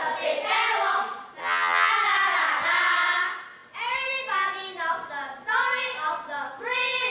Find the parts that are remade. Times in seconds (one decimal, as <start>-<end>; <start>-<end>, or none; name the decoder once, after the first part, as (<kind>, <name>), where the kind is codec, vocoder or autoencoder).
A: 1.4-1.9 (vocoder, HiFi-GAN)